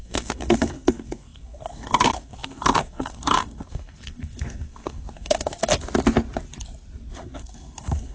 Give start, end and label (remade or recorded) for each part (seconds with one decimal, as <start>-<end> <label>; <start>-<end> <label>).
0.0-5.6 remade; 5.6-7.2 recorded; 7.2-8.1 remade